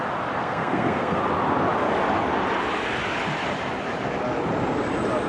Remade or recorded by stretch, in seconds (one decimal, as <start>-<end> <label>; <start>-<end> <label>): 0.0-0.4 recorded; 0.4-1.2 remade; 1.2-5.3 recorded

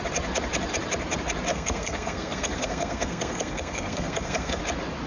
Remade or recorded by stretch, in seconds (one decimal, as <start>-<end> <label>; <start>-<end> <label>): 0.0-1.5 recorded; 1.5-4.6 remade; 4.6-5.1 recorded

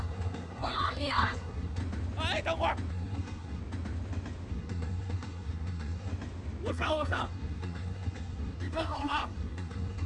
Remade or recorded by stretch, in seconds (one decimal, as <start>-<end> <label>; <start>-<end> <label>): 0.0-1.8 remade; 1.8-2.9 recorded; 2.9-3.6 remade; 3.6-4.5 recorded; 4.5-6.1 remade; 6.1-6.7 recorded; 6.7-10.1 remade

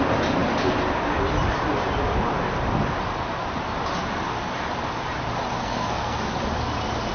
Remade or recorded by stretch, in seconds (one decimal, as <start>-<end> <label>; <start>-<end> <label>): 0.0-5.6 recorded; 5.6-6.2 remade; 6.2-7.1 recorded